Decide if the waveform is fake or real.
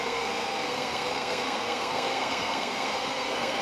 fake